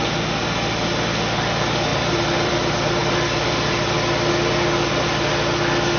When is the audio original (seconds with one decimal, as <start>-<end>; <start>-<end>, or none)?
0.0-1.9; 2.5-6.0